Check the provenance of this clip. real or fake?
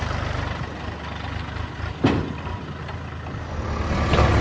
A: real